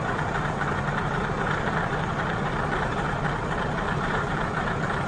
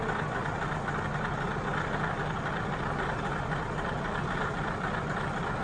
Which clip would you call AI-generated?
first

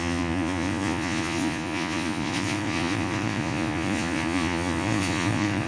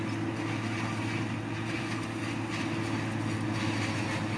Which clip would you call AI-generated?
first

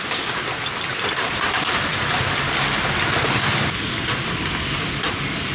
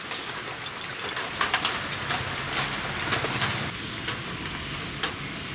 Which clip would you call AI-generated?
first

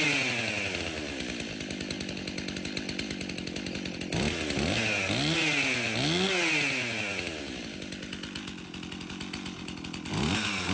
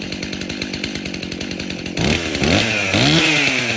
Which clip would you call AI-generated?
second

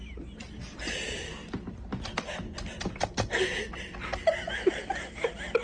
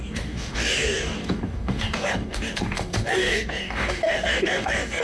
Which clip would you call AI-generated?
second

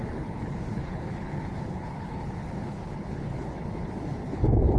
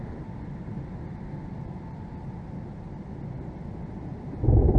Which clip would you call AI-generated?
first